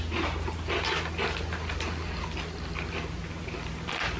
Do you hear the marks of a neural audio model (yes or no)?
no